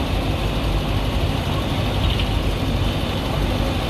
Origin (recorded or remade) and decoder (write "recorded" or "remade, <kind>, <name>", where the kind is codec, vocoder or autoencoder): recorded